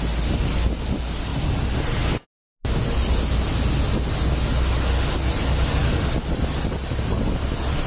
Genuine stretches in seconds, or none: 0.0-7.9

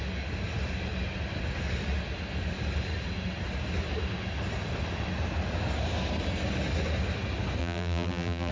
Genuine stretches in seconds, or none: 0.0-7.6

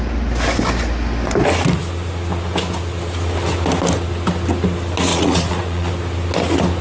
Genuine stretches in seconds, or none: 0.0-5.1; 5.9-6.8

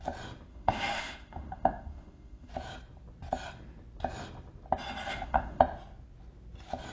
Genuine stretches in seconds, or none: 0.0-0.5; 2.5-5.1; 5.6-6.9